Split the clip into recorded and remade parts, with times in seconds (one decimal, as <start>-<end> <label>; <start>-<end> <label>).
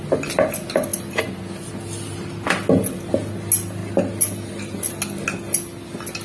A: 0.0-6.2 recorded